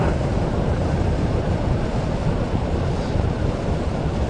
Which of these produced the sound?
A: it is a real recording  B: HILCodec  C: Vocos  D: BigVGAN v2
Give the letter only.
D